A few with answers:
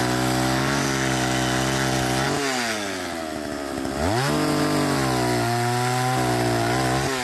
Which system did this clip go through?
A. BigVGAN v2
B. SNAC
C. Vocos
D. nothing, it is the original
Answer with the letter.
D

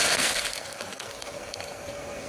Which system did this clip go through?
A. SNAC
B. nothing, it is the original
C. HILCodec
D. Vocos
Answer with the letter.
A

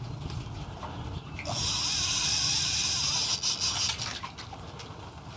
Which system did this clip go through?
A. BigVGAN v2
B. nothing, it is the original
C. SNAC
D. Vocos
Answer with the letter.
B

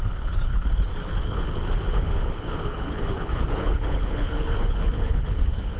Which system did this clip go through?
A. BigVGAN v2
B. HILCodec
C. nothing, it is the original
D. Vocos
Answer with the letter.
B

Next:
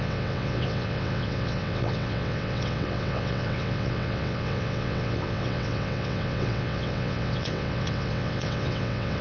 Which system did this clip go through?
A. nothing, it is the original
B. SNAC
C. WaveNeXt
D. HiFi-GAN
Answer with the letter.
C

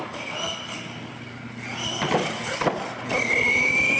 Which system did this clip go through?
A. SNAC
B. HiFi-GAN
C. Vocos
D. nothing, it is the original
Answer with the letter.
D